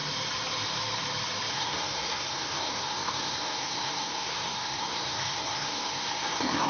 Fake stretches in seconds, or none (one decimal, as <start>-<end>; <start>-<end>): 1.5-6.7